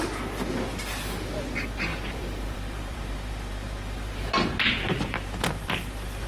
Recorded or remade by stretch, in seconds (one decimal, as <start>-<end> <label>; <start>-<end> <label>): 0.0-1.9 recorded; 1.9-5.7 remade; 5.7-6.3 recorded